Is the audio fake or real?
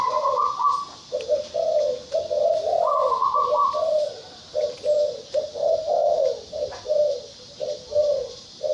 real